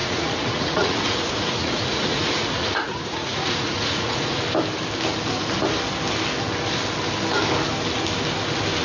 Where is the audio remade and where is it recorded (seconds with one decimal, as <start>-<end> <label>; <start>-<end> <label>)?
0.0-4.4 remade; 4.4-8.8 recorded